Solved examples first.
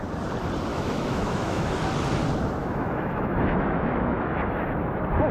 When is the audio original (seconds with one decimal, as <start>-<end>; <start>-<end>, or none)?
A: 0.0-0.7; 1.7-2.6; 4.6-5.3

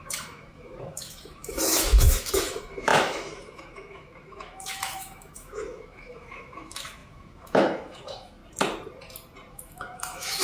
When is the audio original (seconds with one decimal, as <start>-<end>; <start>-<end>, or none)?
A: 8.4-9.5

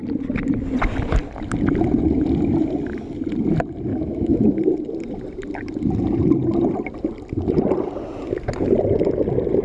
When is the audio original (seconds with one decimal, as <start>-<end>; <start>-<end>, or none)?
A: 0.0-3.9; 4.6-9.6

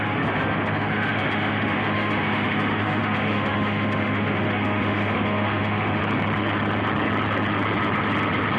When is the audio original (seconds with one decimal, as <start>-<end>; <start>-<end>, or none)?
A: 6.0-8.6

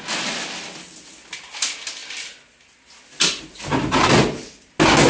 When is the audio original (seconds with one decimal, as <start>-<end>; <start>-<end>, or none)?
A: 0.0-5.1

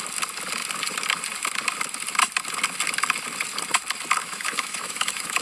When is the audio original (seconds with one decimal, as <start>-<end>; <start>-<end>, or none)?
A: 0.0-4.2